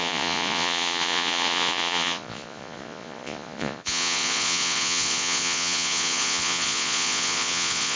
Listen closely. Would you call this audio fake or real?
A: fake